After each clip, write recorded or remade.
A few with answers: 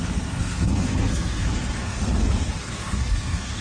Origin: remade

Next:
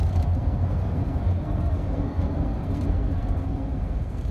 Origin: remade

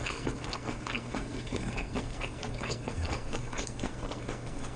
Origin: remade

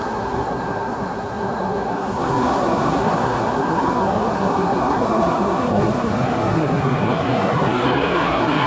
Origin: remade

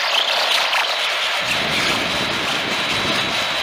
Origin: recorded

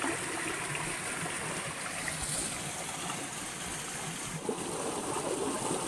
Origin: recorded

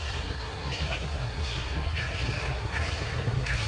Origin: remade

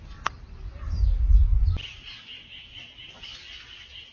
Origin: recorded